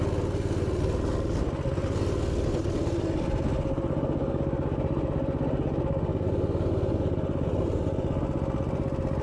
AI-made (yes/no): no